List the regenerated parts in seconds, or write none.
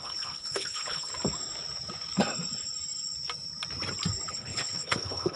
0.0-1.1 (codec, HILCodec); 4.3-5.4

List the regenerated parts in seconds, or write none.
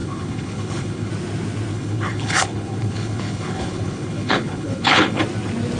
0.0-1.1 (codec, HILCodec); 1.7-5.2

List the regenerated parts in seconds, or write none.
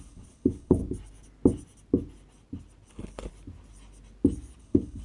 0.0-0.8 (codec, HILCodec); 2.9-3.3; 4.6-5.0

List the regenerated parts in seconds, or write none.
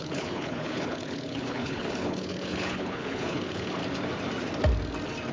0.0-3.8 (codec, HILCodec)